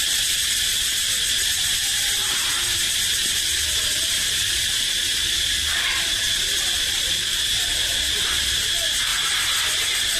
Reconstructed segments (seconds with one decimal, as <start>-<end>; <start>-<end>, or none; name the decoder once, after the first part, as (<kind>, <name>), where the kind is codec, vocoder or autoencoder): 0.0-9.1 (vocoder, BigVGAN v2)